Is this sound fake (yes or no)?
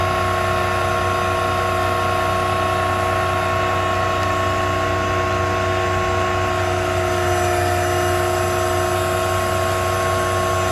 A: no